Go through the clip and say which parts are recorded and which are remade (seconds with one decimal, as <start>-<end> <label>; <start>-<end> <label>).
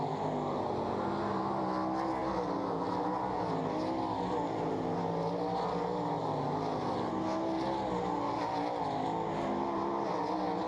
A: 0.0-10.7 recorded